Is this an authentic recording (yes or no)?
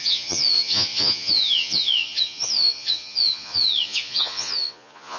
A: no